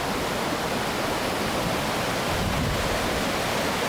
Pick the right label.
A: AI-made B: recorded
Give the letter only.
B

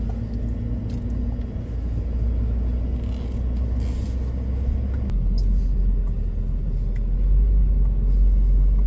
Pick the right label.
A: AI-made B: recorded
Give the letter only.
B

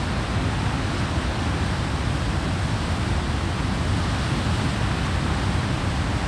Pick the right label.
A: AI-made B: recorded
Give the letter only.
B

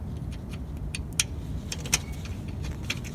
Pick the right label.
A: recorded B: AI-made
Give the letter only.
A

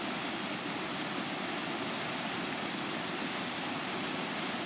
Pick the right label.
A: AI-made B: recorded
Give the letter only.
B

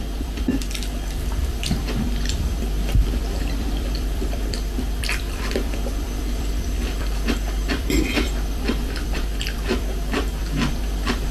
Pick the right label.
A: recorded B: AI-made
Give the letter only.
B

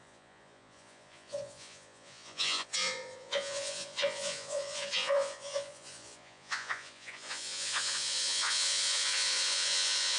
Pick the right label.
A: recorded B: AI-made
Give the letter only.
B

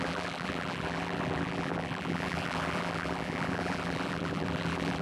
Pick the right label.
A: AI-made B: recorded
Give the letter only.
A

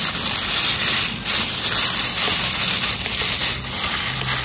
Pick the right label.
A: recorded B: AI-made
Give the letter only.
A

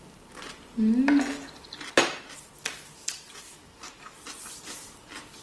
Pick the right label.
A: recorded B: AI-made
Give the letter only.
A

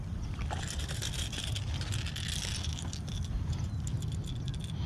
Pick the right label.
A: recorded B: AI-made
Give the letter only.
A